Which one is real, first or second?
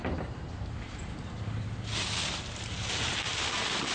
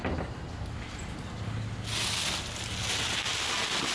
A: second